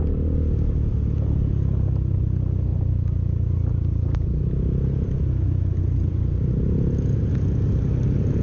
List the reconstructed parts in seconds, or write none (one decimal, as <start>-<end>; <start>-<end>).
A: none